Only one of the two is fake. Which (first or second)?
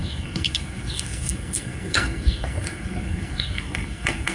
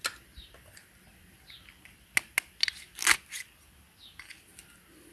first